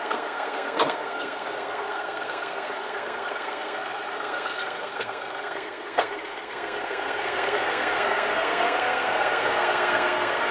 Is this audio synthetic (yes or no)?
yes